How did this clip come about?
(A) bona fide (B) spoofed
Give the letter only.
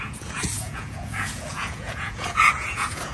B